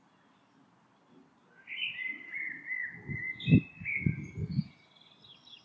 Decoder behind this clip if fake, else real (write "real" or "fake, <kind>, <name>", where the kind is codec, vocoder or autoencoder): real